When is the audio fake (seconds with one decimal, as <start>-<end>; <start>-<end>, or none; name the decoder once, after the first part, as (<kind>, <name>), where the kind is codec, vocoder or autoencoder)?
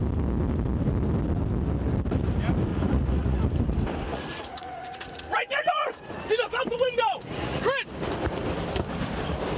2.7-3.4 (vocoder, Vocos); 4.1-7.6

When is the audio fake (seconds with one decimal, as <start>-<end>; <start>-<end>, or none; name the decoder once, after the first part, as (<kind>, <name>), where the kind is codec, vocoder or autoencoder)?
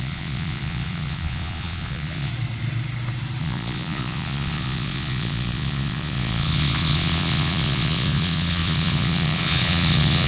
0.0-2.3 (vocoder, Vocos); 3.4-10.3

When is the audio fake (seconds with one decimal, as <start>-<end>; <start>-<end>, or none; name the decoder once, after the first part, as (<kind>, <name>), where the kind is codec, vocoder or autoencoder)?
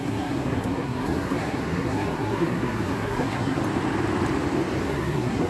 0.0-3.6 (codec, SNAC); 4.8-5.5